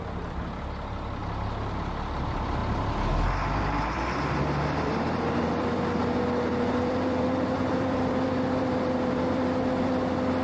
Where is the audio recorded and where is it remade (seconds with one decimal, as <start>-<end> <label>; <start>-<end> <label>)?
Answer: 0.0-1.2 remade; 1.2-1.7 recorded; 1.7-2.6 remade; 2.6-3.6 recorded; 3.6-6.0 remade; 6.0-6.7 recorded; 6.7-10.4 remade